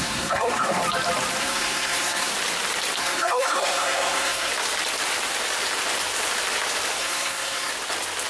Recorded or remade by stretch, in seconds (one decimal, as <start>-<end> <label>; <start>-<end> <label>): 0.0-0.8 remade; 0.8-1.4 recorded; 1.4-2.3 remade; 2.3-3.0 recorded; 3.0-4.5 remade; 4.5-7.0 recorded; 7.0-7.7 remade; 7.7-8.3 recorded